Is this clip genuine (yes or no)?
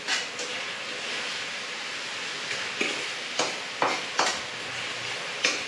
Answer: yes